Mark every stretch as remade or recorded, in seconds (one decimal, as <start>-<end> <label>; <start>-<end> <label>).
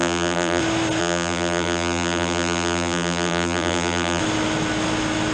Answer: 0.0-0.6 remade; 0.6-1.0 recorded; 1.0-4.2 remade; 4.2-5.3 recorded